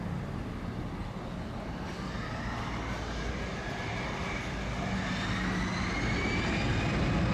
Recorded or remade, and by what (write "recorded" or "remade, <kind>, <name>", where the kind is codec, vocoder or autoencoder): recorded